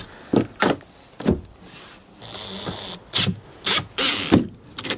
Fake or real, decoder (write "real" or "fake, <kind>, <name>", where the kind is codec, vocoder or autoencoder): real